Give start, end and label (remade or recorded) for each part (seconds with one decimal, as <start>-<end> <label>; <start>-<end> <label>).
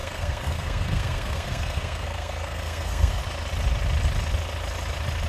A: 0.0-3.2 remade; 3.2-5.3 recorded